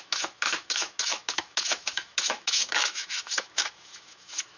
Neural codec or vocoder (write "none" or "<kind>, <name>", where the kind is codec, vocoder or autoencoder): autoencoder, DAC-VAE